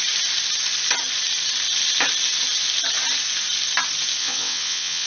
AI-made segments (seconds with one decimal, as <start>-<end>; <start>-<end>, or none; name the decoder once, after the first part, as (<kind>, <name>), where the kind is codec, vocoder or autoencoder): 4.2-5.1 (vocoder, WaveNeXt)